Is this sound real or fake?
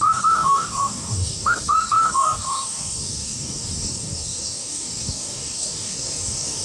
fake